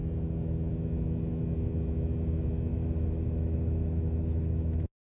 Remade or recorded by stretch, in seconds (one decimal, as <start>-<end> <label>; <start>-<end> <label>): 0.0-2.7 recorded; 2.7-5.1 remade